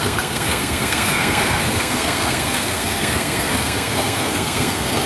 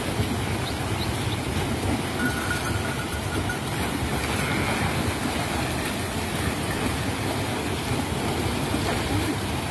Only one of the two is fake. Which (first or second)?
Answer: first